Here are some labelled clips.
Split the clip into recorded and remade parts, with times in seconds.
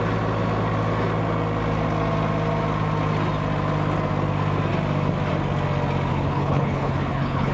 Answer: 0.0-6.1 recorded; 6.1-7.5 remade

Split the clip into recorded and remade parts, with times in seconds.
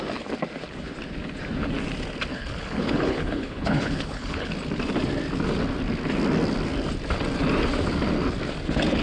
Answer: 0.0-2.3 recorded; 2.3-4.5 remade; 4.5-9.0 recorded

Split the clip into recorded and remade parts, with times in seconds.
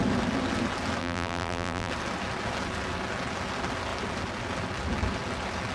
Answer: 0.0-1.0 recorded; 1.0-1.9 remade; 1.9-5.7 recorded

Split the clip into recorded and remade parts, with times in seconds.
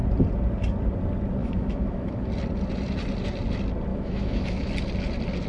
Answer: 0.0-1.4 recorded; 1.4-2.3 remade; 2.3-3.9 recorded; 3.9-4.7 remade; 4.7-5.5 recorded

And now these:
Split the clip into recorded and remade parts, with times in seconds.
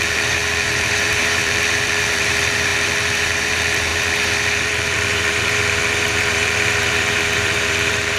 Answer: 0.0-8.2 remade